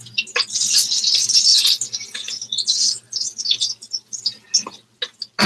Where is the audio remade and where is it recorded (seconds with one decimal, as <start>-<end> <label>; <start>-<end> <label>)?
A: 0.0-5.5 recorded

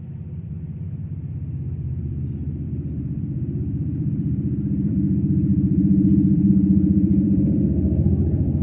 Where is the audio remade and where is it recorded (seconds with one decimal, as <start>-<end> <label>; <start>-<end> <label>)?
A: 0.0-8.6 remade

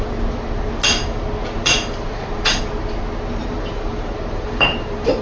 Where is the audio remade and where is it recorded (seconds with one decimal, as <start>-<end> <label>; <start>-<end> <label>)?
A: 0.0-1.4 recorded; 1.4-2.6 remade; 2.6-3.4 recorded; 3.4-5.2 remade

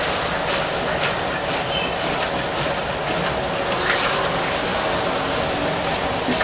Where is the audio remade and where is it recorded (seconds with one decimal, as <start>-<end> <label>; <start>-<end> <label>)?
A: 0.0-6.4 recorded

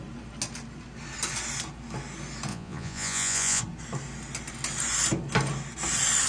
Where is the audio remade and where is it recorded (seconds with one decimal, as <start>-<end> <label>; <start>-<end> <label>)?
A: 0.0-2.5 recorded; 2.5-3.6 remade; 3.6-6.3 recorded